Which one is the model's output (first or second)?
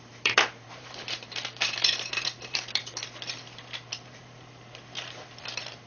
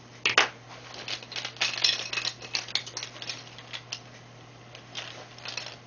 first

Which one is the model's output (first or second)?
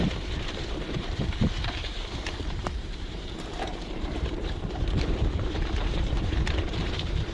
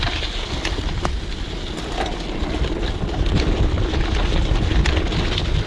first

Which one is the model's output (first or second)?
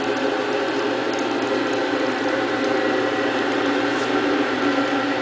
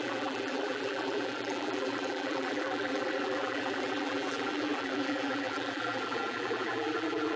second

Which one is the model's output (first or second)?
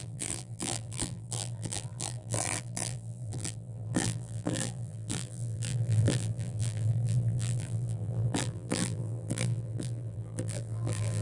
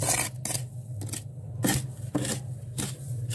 first